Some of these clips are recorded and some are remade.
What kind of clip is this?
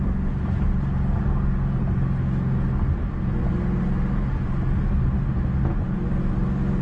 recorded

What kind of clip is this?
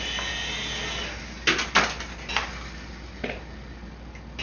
recorded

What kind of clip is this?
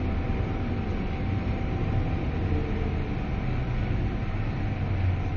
recorded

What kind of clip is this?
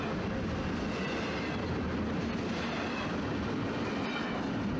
recorded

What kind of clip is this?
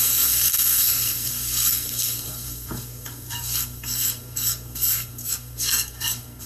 remade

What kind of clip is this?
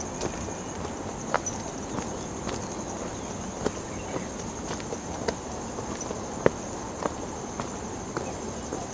recorded